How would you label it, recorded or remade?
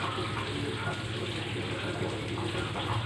recorded